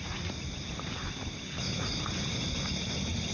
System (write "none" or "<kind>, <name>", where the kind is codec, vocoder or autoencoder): none